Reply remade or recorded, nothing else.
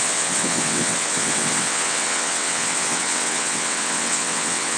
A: remade